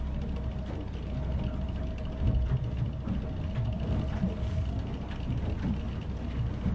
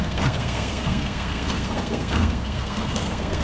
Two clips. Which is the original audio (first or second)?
first